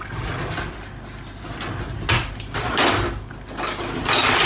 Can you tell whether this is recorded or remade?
recorded